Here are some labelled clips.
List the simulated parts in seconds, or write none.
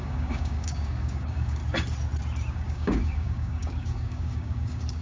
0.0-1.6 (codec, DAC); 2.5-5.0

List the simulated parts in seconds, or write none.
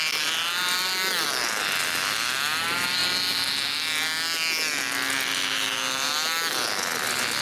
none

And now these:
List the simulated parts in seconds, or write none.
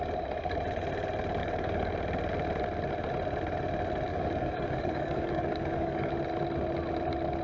1.4-1.9 (codec, DAC); 4.1-6.1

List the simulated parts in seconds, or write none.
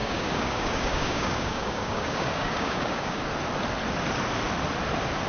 0.0-3.2 (codec, DAC)